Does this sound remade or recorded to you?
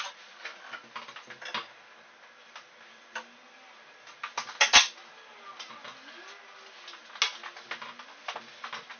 recorded